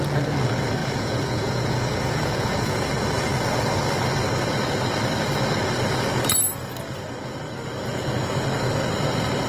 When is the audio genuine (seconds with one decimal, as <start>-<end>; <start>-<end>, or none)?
0.0-0.8; 2.9-9.5